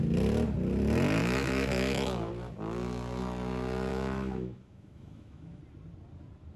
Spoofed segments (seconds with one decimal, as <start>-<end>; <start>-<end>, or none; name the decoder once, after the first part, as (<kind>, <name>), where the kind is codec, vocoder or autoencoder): 1.2-2.3 (autoencoder, DAC-VAE); 3.9-5.6

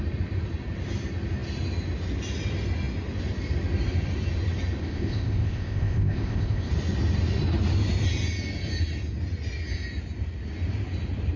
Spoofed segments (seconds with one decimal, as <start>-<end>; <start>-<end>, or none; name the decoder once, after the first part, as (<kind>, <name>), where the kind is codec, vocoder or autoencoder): 4.8-6.7 (codec, ZipCodec)